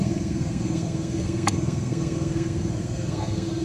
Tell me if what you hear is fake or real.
fake